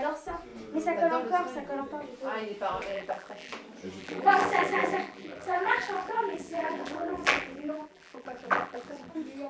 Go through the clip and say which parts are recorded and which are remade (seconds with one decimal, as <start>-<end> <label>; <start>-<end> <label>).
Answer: 0.0-2.9 recorded; 2.9-3.5 remade; 3.5-4.0 recorded; 4.0-9.1 remade; 9.1-9.5 recorded